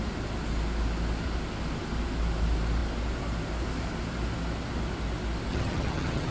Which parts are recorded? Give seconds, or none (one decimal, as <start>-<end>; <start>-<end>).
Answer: 0.0-5.5

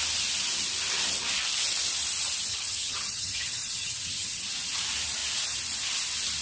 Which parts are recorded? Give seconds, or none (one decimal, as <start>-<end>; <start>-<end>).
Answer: 0.0-2.5; 4.4-6.4

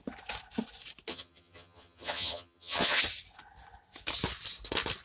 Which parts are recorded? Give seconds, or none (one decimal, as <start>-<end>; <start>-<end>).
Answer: 0.0-1.1; 3.0-5.0

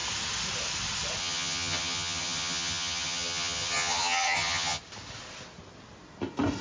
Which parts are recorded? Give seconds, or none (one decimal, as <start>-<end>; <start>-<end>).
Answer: 0.0-1.2; 4.8-6.6